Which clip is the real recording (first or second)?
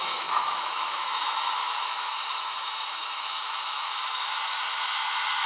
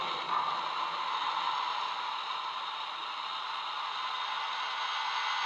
second